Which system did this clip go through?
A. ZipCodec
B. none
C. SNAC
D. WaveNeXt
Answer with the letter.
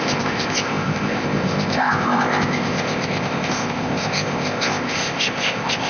A